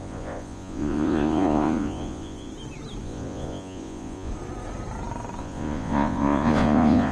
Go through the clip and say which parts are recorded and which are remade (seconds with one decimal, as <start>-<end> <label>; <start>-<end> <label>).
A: 0.0-2.5 remade; 2.5-3.0 recorded; 3.0-4.3 remade; 4.3-5.4 recorded; 5.4-7.1 remade